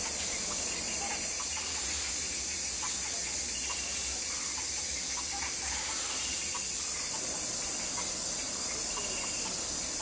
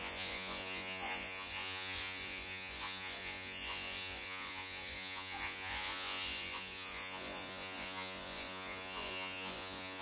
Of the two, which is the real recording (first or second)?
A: first